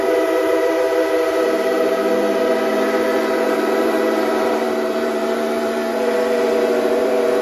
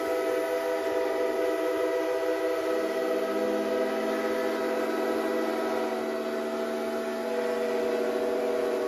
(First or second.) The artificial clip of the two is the first